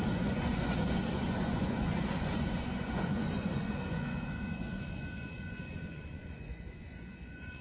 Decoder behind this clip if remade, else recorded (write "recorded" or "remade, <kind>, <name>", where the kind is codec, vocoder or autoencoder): remade, vocoder, Vocos